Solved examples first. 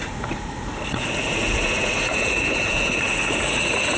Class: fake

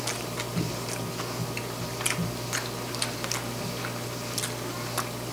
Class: real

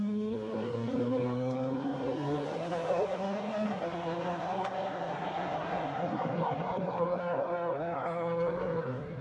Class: fake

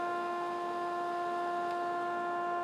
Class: real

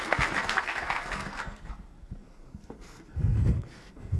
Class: fake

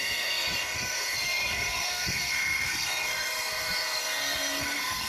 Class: fake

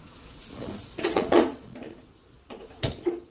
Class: fake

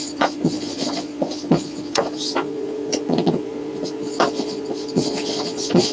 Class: fake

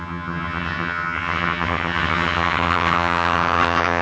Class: fake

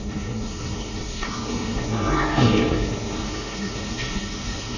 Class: fake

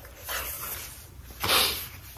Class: real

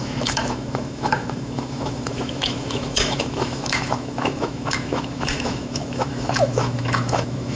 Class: fake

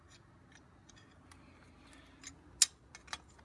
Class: real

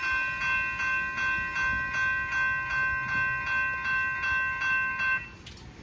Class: real